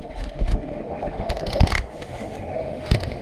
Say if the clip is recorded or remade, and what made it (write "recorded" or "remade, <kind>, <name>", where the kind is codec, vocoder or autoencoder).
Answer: remade, autoencoder, DAC-VAE